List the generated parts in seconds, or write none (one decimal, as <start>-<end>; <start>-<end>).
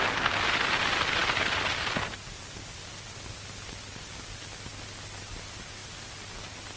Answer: none